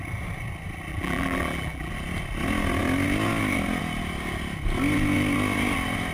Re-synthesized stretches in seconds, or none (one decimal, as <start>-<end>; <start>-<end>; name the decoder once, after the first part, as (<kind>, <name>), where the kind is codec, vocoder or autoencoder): 0.9-1.9 (vocoder, BigVGAN v2)